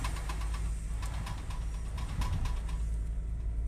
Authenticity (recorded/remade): recorded